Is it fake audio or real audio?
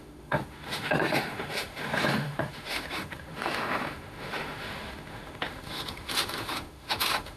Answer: fake